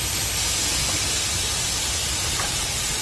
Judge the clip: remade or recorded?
recorded